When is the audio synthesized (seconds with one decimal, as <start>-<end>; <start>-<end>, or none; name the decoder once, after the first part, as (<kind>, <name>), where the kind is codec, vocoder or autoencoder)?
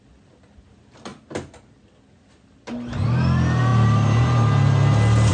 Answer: none